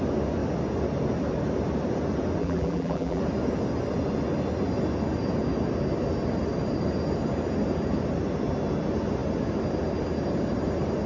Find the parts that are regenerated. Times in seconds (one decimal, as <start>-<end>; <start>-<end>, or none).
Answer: 2.4-3.2